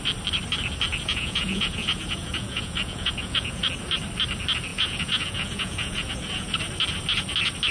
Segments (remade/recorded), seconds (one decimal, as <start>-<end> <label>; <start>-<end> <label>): 0.0-0.9 recorded; 0.9-3.7 remade; 3.7-4.7 recorded; 4.7-6.6 remade; 6.6-7.7 recorded